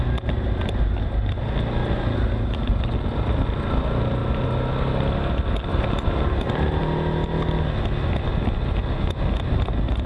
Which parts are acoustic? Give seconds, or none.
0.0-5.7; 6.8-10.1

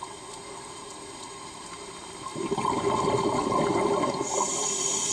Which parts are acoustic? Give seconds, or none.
0.0-5.1

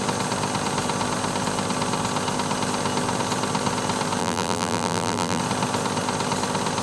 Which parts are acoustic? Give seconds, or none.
0.0-4.2; 5.4-6.8

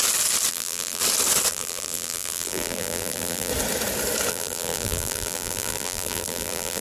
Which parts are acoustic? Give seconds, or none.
0.0-0.5; 1.0-1.5; 3.5-4.3

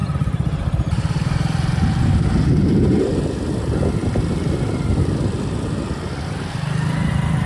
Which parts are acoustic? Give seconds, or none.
3.2-7.5

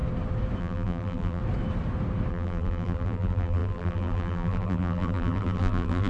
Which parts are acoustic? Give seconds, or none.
0.0-0.6; 1.4-2.3

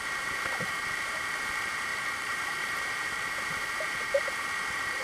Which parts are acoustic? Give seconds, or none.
0.0-1.9; 2.8-5.0